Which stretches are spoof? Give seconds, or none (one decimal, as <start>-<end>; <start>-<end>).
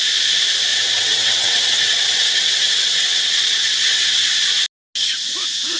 0.7-4.2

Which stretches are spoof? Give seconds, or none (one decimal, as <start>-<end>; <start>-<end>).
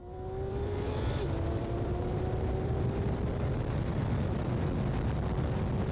0.0-3.5; 3.9-4.5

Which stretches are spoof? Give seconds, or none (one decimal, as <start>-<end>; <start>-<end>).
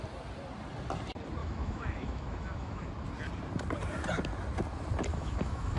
1.4-2.9; 5.1-5.8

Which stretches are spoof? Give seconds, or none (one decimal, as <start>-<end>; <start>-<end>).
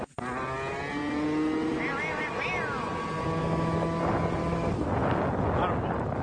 3.4-4.0; 4.4-5.2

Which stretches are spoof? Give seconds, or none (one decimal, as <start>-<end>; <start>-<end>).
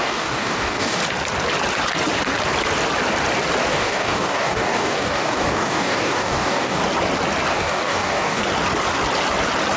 0.0-1.0; 3.7-6.8; 7.5-8.4